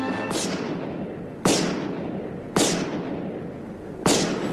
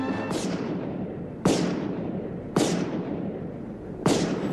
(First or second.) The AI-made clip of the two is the second